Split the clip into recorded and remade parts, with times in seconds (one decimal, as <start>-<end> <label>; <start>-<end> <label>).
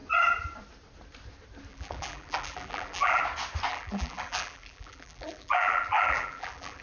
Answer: 0.0-1.7 recorded; 1.7-3.2 remade; 3.2-3.7 recorded; 3.7-6.8 remade